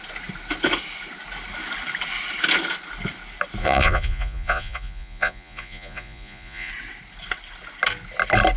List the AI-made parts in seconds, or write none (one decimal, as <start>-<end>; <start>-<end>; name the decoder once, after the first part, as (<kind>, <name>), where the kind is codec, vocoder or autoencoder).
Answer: 3.6-6.7 (vocoder, Vocos)